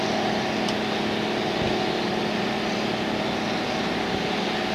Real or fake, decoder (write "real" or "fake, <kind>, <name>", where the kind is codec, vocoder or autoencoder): real